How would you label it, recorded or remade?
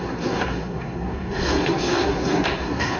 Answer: remade